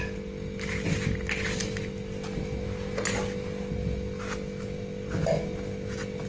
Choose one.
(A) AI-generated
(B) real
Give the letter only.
B